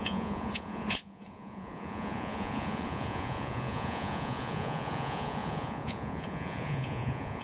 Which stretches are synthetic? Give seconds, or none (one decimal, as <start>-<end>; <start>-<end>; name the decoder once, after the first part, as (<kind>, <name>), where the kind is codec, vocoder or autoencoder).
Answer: 0.0-7.4 (vocoder, Vocos)